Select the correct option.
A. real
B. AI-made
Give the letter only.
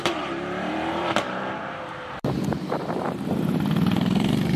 B